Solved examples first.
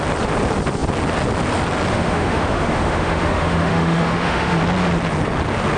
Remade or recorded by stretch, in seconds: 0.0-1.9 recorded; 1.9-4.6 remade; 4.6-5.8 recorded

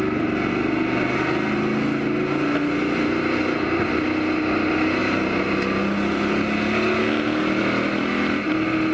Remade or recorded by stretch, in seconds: 0.0-8.9 recorded

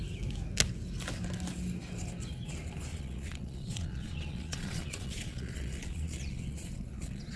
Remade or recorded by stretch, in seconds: 0.0-2.9 recorded; 2.9-7.4 remade